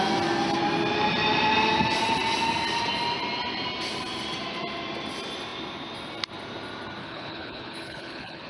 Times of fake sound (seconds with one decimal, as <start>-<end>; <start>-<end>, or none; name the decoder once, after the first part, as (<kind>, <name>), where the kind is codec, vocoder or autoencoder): 7.0-8.5 (codec, HILCodec)